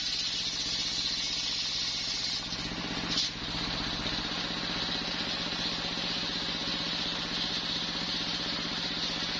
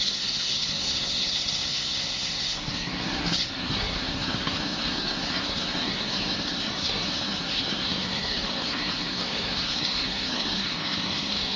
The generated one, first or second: second